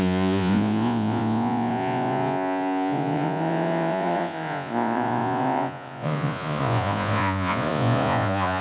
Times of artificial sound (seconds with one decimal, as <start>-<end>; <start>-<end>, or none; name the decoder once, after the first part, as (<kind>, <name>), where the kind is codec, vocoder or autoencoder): 0.0-8.6 (vocoder, Vocos)